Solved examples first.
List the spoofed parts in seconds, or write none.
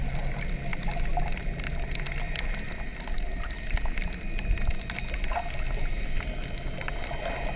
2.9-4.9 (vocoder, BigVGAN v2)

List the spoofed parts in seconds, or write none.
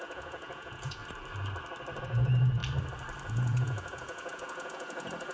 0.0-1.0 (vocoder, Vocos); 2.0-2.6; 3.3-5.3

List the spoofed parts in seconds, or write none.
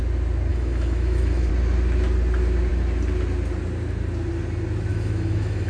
0.5-1.5 (autoencoder, DAC-VAE); 4.9-5.7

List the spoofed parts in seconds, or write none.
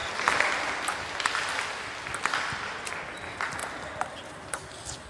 3.6-4.3 (vocoder, BigVGAN v2)